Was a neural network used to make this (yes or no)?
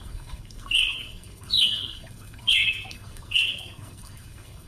yes